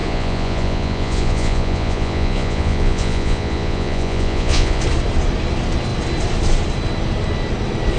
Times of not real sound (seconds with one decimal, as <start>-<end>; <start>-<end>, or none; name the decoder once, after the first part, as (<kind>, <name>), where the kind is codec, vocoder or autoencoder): 0.0-4.8 (vocoder, Vocos)